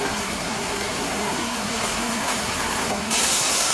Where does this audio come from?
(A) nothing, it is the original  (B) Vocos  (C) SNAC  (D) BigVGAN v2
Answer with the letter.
C